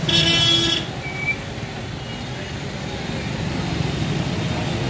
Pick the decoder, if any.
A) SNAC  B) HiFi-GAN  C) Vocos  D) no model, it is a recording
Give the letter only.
D